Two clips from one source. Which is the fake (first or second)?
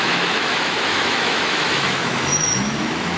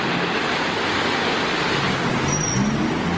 first